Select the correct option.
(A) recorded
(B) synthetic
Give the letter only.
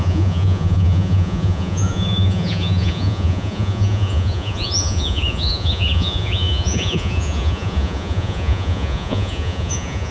B